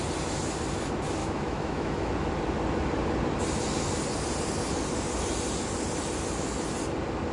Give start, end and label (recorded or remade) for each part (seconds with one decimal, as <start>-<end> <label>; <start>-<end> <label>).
0.0-1.2 recorded; 1.2-2.1 remade; 2.1-7.3 recorded